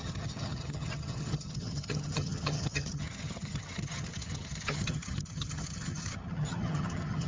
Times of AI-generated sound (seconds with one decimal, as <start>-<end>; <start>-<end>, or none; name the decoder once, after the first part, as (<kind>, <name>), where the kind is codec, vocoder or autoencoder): 0.0-7.3 (vocoder, HiFi-GAN)